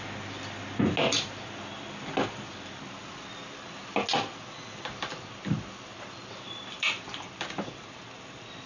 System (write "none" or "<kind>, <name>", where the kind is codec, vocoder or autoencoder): none